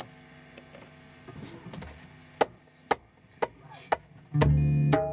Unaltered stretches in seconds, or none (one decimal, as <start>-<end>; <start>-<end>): 0.0-5.1